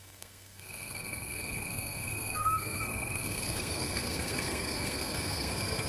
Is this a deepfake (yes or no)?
yes